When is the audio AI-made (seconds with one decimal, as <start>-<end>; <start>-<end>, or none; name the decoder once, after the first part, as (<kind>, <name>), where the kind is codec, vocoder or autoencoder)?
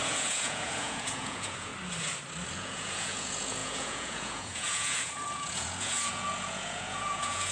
0.0-1.7 (vocoder, Vocos); 2.5-7.5